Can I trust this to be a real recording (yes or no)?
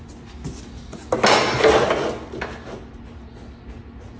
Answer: yes